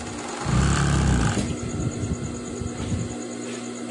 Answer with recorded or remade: recorded